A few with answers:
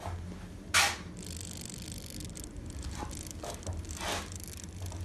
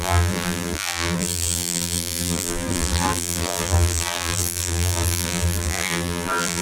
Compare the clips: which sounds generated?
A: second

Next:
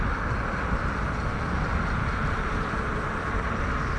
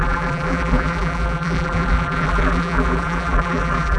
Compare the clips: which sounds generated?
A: second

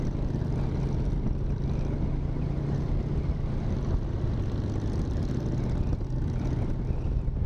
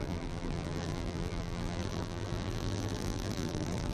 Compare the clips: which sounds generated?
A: second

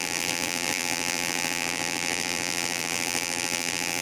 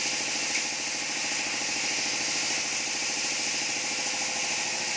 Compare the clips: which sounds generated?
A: first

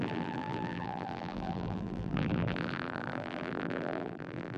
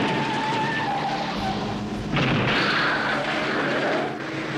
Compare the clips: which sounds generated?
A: first